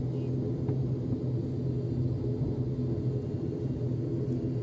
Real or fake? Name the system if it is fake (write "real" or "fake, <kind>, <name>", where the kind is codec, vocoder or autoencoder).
real